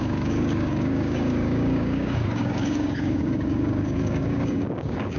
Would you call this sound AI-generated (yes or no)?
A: yes